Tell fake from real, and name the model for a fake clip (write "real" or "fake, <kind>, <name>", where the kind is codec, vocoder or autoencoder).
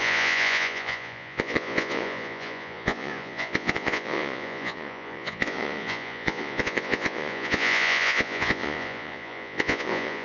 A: fake, vocoder, Vocos